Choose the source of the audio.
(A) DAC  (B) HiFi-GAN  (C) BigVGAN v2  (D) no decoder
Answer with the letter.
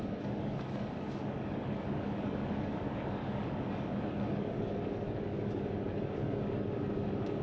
A